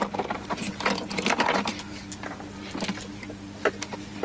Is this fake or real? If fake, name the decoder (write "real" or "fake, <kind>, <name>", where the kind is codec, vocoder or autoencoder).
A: real